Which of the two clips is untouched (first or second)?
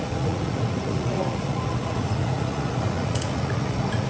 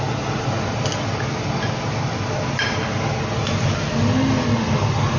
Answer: second